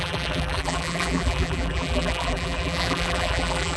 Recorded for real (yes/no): no